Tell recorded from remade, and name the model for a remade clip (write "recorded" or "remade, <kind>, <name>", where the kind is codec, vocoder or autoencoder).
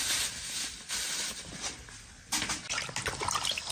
recorded